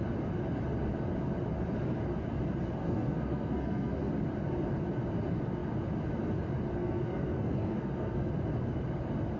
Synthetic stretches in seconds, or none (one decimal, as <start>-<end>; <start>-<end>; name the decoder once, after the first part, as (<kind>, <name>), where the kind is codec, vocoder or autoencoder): 2.8-4.1 (codec, SNAC); 6.8-8.3